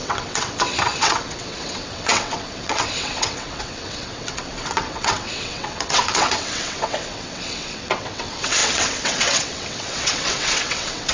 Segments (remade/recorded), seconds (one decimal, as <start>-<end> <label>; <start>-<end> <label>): 0.0-11.1 remade

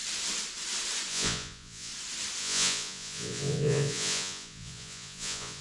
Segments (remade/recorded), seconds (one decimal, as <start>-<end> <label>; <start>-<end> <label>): 0.0-1.1 recorded; 1.1-1.9 remade; 1.9-2.4 recorded; 2.4-5.6 remade

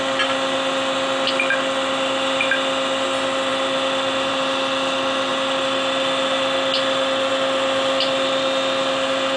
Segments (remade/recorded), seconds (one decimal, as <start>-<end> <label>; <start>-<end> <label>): 0.0-9.4 recorded

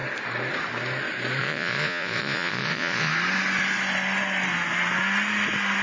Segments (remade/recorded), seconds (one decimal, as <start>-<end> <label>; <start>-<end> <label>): 0.0-1.4 recorded; 1.4-3.1 remade; 3.1-5.8 recorded

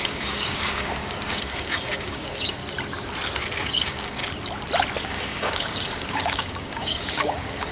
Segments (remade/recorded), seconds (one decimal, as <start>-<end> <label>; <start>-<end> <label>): 0.0-2.6 remade; 2.6-3.6 recorded; 3.6-4.2 remade; 4.2-5.0 recorded; 5.0-7.7 remade